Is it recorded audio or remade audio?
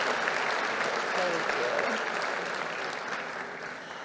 recorded